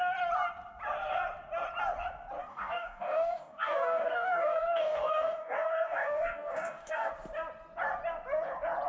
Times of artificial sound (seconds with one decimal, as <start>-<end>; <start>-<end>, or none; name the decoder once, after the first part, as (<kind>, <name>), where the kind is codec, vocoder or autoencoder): 2.5-7.1 (codec, DAC)

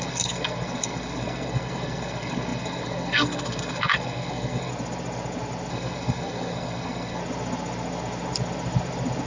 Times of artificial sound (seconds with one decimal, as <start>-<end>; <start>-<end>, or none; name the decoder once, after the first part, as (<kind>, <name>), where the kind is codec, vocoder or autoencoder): 0.0-4.7 (codec, SNAC); 5.7-7.2

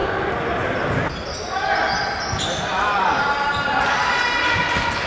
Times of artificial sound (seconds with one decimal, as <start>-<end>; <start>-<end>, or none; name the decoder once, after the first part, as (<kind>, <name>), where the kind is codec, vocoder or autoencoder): 2.7-4.2 (vocoder, BigVGAN v2)